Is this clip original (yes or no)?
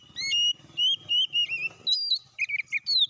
yes